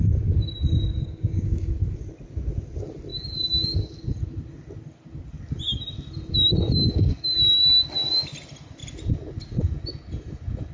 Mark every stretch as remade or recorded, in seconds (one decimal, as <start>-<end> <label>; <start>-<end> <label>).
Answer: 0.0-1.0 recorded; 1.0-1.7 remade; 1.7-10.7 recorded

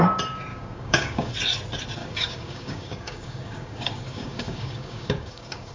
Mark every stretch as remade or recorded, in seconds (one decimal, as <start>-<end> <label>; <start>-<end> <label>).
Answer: 0.0-0.5 recorded; 0.5-1.3 remade; 1.3-2.0 recorded; 2.0-5.7 remade

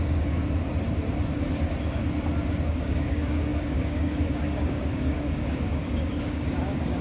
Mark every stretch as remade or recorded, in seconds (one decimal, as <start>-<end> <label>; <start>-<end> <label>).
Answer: 0.0-0.4 remade; 0.4-2.7 recorded; 2.7-7.0 remade

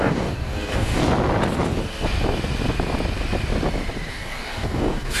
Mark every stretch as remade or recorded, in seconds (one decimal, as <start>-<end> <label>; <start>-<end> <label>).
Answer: 0.0-1.0 remade; 1.0-4.1 recorded; 4.1-5.2 remade

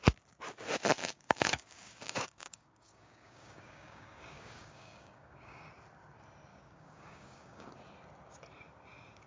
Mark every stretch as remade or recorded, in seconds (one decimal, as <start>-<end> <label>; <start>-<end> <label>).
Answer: 0.0-1.0 recorded; 1.0-5.7 remade; 5.7-6.5 recorded; 6.5-7.7 remade; 7.7-9.3 recorded

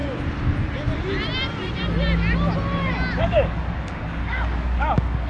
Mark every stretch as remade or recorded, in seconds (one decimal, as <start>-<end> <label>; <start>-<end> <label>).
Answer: 0.0-3.2 recorded; 3.2-5.3 remade